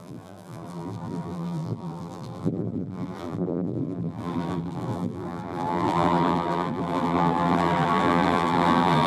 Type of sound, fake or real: fake